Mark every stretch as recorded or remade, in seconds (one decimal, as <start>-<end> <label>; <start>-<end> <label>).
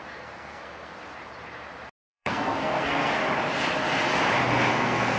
0.0-0.9 remade; 0.9-1.9 recorded; 1.9-3.2 remade; 3.2-4.7 recorded; 4.7-5.2 remade